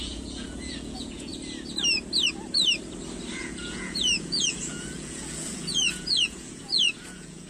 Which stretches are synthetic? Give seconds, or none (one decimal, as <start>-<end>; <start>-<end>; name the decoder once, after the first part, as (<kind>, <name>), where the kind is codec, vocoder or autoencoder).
0.0-1.3 (vocoder, Vocos); 3.4-7.5